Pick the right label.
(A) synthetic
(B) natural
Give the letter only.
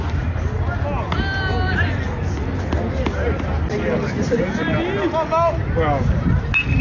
B